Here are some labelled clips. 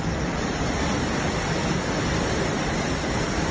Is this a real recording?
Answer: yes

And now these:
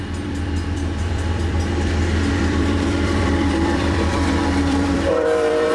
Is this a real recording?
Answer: no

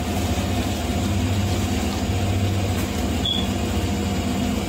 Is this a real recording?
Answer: yes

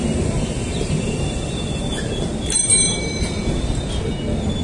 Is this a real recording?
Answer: yes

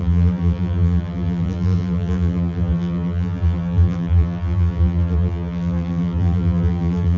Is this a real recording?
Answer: no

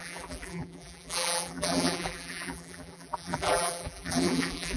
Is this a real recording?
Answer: no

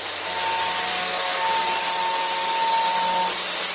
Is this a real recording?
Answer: yes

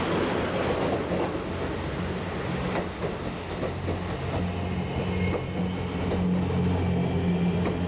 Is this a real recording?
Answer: yes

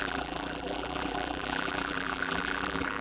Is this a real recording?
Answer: no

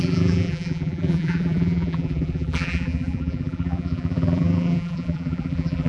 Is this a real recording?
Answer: no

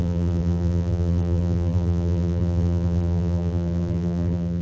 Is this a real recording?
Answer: no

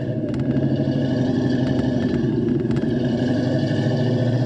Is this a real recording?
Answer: no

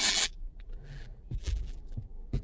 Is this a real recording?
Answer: no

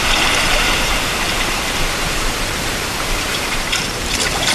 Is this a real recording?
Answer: no